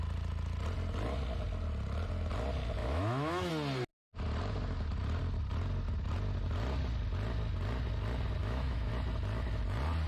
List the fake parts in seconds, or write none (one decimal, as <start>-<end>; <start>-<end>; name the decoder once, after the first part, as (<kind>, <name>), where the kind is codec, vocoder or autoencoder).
2.8-3.5 (autoencoder, DAC-VAE); 8.4-8.9